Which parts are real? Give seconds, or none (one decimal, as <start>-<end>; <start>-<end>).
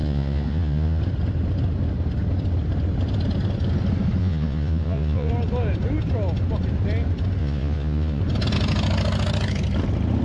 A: 1.0-4.2; 5.3-7.4; 8.2-10.2